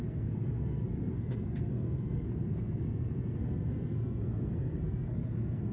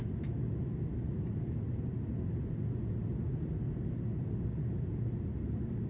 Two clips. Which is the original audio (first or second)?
second